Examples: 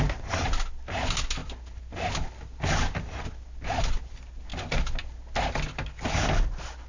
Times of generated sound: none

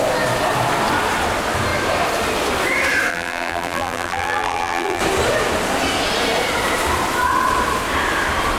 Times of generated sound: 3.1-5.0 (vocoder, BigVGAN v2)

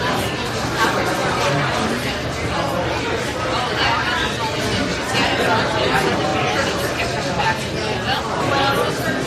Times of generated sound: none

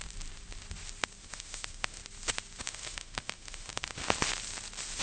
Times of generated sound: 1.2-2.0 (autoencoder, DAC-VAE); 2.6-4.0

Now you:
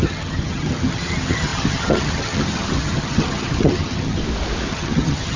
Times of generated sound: 0.0-4.2 (vocoder, HiFi-GAN); 4.7-5.4

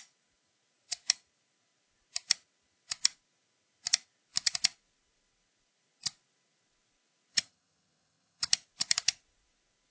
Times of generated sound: 7.3-8.5 (vocoder, HiFi-GAN)

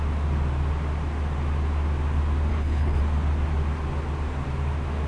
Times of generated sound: 2.5-3.0 (codec, HILCodec)

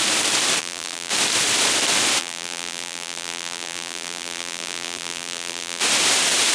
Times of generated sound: 0.6-1.1 (vocoder, BigVGAN v2); 2.2-5.8